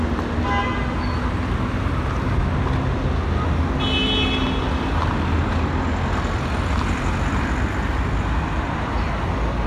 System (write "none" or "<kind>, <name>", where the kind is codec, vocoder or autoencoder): none